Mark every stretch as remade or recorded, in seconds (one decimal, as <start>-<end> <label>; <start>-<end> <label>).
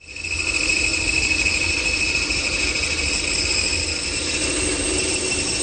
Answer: 0.0-5.6 recorded